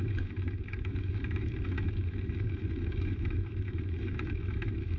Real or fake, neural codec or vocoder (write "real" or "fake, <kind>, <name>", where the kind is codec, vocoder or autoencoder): fake, autoencoder, DAC-VAE